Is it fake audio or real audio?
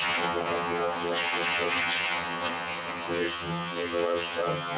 fake